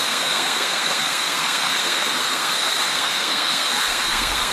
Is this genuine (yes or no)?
no